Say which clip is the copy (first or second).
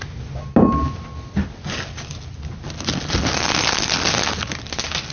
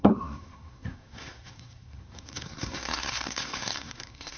second